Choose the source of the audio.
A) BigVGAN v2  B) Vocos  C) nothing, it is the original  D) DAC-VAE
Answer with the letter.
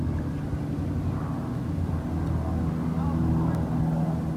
C